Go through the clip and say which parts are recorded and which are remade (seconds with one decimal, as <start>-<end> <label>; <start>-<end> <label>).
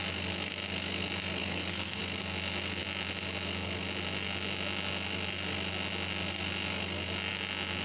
0.0-1.4 recorded; 1.4-2.0 remade; 2.0-7.8 recorded